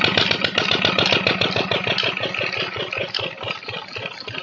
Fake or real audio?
real